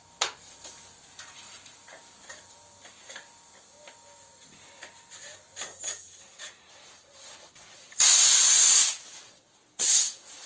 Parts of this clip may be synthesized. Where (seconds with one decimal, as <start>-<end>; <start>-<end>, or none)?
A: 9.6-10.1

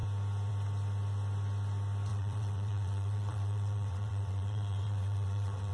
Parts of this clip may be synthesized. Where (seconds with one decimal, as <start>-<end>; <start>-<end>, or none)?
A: 2.1-5.7

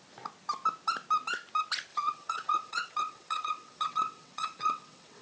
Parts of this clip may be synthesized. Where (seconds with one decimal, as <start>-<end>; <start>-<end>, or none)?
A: 1.9-5.2

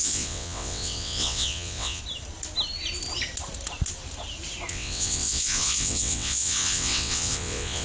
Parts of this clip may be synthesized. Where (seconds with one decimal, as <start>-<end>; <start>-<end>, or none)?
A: 0.0-2.0; 4.7-7.8